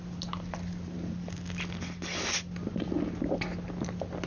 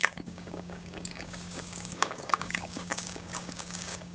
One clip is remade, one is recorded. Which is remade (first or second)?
second